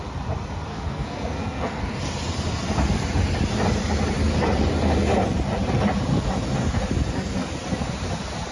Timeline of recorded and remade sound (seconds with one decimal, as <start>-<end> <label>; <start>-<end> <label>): 0.0-0.7 recorded; 0.7-1.8 remade; 1.8-8.5 recorded